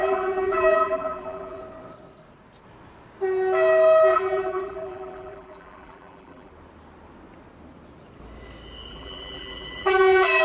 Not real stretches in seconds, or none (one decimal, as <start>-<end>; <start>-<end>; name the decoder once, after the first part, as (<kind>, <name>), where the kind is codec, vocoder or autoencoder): 0.0-1.6 (vocoder, BigVGAN v2); 4.1-6.5; 8.9-10.4